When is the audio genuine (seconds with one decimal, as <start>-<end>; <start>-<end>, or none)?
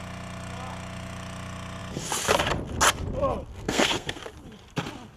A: 0.0-3.5; 4.2-5.2